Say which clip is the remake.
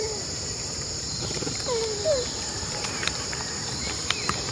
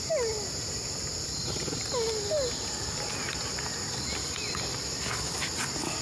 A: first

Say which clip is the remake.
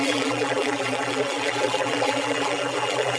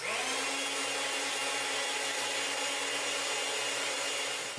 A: first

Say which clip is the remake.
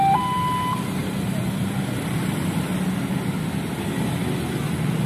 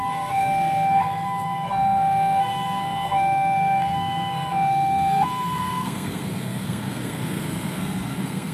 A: second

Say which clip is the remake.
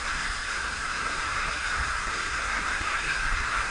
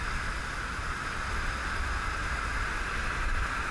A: first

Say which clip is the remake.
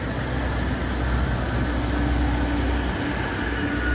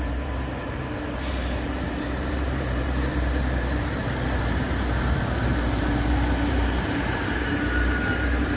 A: second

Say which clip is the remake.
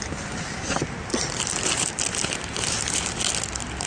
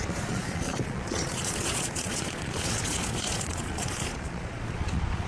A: second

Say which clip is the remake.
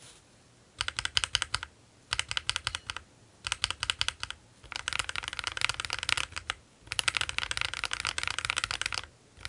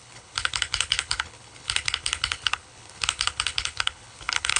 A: second